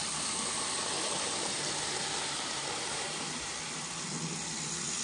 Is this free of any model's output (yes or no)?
yes